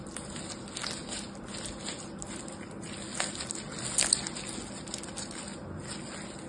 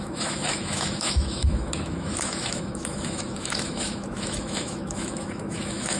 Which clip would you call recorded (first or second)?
first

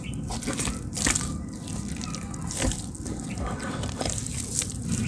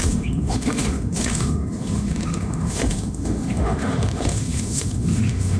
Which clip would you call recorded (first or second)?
first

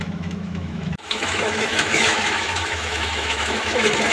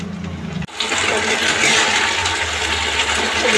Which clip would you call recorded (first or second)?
second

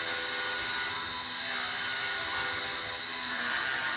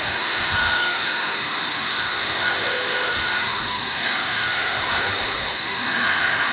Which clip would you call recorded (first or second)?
first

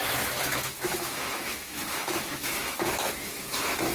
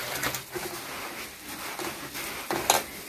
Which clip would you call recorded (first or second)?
second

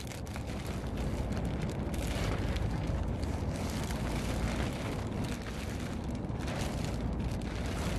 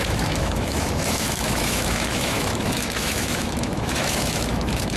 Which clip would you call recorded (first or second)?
first